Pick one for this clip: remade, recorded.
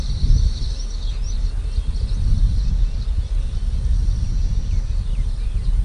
recorded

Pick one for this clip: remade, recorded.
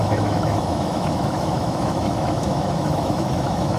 remade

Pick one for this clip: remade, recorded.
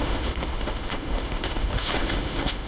remade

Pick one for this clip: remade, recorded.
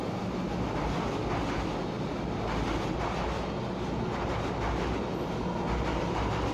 recorded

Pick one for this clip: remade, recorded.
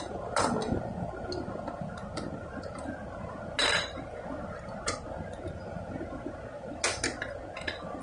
recorded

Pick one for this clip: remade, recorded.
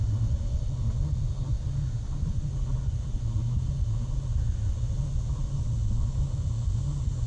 recorded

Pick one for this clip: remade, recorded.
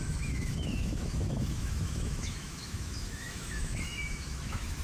remade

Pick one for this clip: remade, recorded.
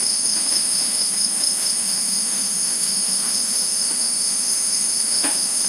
remade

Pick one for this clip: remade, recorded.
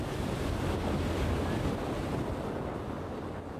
recorded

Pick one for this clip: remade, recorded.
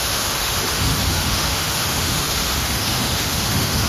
remade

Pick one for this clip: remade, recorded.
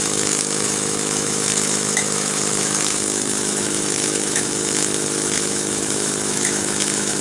remade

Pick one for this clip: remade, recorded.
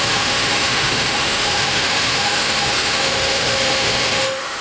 remade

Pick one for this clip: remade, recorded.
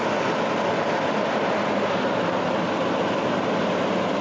recorded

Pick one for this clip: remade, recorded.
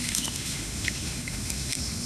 remade